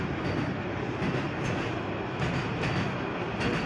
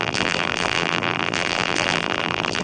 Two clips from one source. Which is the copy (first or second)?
second